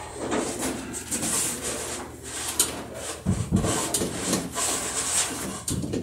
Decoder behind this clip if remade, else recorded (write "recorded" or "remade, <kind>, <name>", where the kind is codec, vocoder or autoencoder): remade, vocoder, BigVGAN v2